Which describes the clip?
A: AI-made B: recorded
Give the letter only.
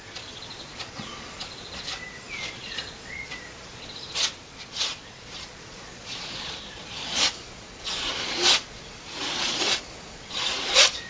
A